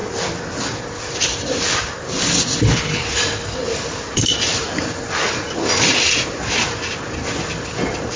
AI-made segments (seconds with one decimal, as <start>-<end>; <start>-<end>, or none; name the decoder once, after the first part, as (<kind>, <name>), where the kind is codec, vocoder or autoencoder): 2.6-3.0 (codec, HILCodec)